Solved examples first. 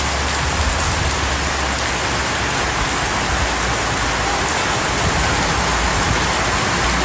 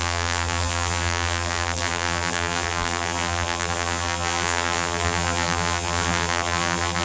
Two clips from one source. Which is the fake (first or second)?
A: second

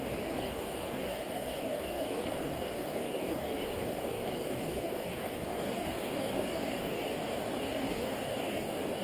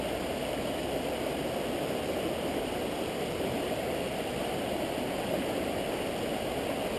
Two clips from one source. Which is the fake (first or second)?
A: first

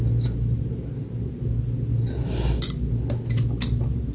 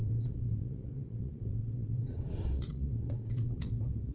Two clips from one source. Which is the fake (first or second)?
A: second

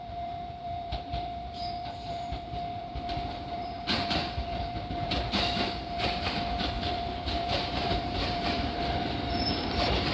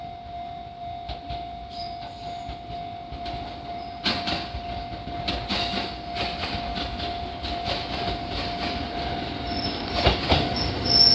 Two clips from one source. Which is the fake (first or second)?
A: first